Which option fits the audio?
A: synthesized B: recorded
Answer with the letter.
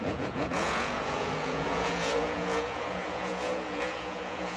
A